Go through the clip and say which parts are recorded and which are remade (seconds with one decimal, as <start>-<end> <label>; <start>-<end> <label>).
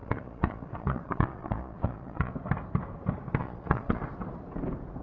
0.0-2.3 remade; 2.3-3.4 recorded; 3.4-4.0 remade; 4.0-5.0 recorded